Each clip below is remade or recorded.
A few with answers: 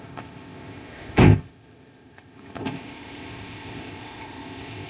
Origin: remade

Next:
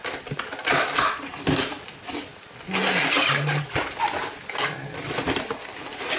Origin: recorded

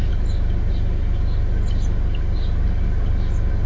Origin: recorded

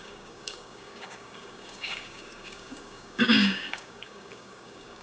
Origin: remade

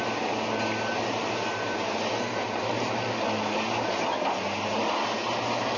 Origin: recorded